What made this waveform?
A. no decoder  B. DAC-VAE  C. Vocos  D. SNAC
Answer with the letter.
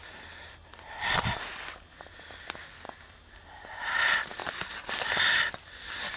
A